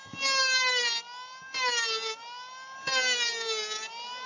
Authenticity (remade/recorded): recorded